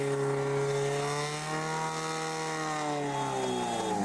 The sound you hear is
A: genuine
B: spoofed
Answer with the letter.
A